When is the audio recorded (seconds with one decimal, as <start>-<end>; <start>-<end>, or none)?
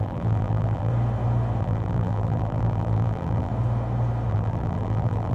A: 0.9-1.6; 3.5-4.3